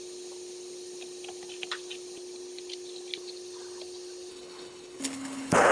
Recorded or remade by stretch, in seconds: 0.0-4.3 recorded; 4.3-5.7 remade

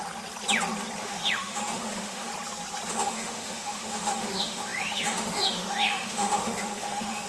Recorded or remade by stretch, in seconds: 0.0-1.0 recorded; 1.0-2.3 remade; 2.3-2.9 recorded; 2.9-7.3 remade

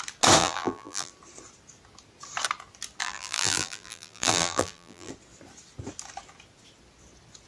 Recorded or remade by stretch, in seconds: 0.0-0.4 recorded; 0.4-1.1 remade; 1.1-3.0 recorded; 3.0-5.1 remade; 5.1-7.5 recorded

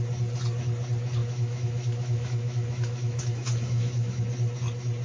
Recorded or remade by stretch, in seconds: 0.0-1.2 recorded; 1.2-4.2 remade; 4.2-5.0 recorded

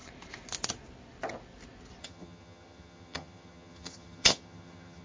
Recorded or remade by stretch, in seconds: 0.0-2.0 recorded; 2.0-5.0 remade

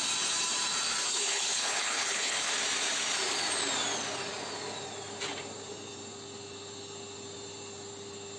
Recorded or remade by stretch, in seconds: 0.0-1.1 recorded; 1.1-2.5 remade; 2.5-8.4 recorded

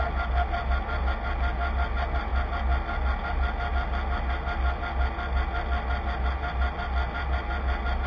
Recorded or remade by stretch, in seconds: 0.0-8.1 recorded

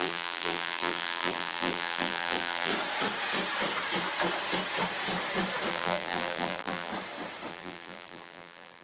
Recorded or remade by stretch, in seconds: 0.0-2.7 remade; 2.7-5.7 recorded; 5.7-6.9 remade; 6.9-7.5 recorded; 7.5-8.8 remade